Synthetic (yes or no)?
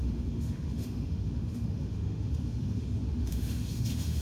yes